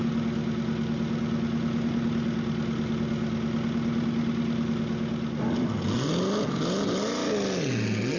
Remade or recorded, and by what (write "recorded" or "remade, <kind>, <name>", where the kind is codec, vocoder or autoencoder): recorded